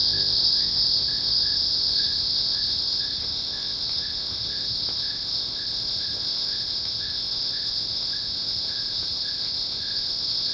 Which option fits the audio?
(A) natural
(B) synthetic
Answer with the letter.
B